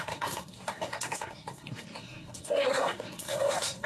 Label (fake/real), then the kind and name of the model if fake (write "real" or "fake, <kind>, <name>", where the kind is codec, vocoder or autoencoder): fake, codec, SNAC